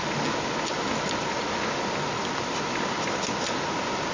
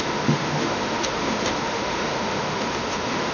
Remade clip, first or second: second